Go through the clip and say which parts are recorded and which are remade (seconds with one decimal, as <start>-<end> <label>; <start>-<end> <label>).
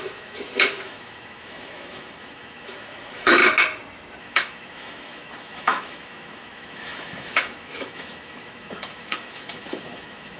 0.0-3.4 remade; 3.4-4.2 recorded; 4.2-10.4 remade